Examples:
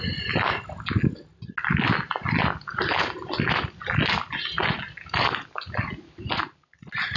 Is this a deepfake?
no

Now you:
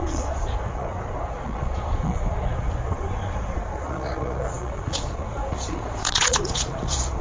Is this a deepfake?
yes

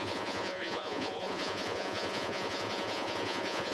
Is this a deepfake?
yes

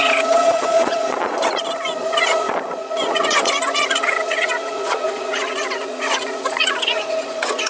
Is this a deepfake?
yes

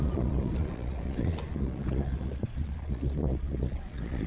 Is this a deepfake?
yes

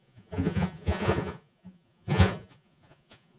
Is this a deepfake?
yes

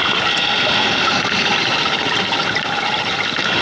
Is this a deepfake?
no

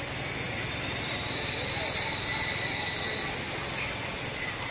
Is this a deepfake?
no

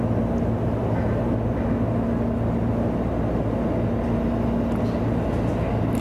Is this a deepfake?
no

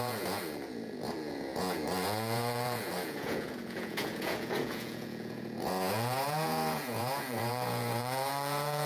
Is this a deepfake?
yes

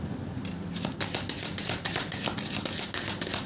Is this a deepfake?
no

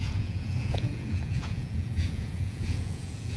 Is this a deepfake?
yes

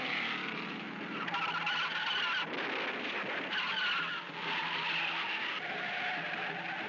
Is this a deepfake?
no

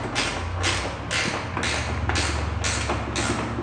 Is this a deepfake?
no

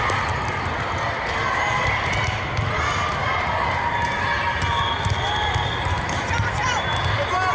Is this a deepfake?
no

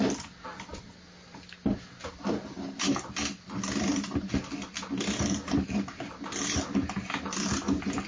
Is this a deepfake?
no